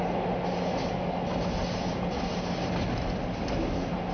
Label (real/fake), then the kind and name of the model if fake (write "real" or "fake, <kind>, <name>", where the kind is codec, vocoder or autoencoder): real